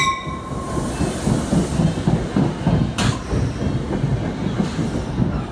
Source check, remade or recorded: recorded